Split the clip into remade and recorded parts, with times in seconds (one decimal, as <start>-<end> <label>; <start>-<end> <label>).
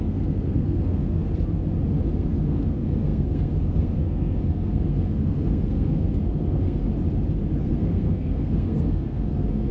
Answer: 0.0-1.3 remade; 1.3-2.1 recorded; 2.1-6.8 remade; 6.8-7.6 recorded; 7.6-9.7 remade